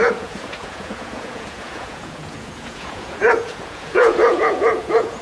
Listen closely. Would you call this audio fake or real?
fake